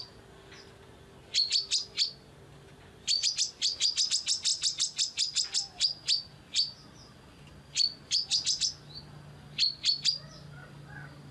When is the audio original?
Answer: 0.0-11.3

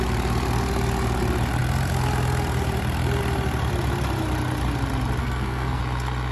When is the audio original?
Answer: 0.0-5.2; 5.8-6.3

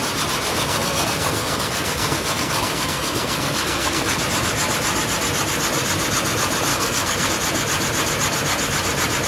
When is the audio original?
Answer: 0.0-0.5; 4.2-6.7; 7.3-9.3

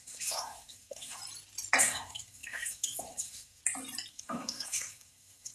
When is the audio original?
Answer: 1.2-1.8; 3.6-4.1

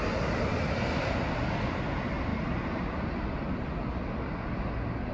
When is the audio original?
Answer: 0.0-5.1

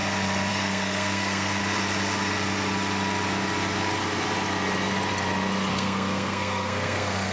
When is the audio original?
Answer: 0.0-0.5; 1.6-5.7

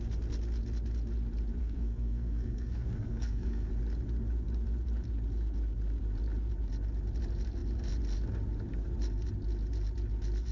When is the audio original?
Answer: 0.0-1.6; 3.7-10.5

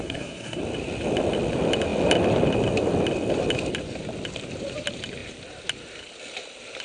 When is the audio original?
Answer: 0.6-6.8